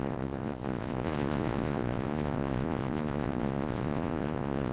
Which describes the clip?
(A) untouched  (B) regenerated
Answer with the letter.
B